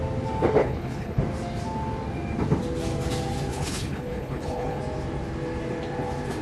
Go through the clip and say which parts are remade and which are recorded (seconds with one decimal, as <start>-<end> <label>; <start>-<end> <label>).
0.0-0.6 recorded; 0.6-1.2 remade; 1.2-3.5 recorded; 3.5-4.8 remade; 4.8-6.4 recorded